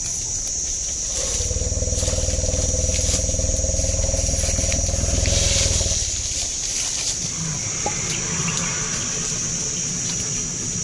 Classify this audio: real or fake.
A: real